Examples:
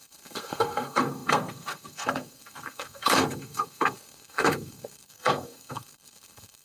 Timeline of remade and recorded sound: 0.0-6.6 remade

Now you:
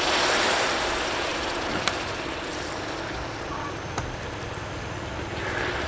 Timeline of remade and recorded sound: 0.0-5.9 recorded

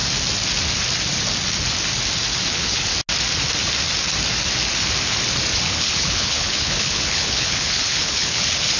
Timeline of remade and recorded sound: 0.0-2.5 recorded; 2.5-2.9 remade; 2.9-5.5 recorded; 5.5-8.8 remade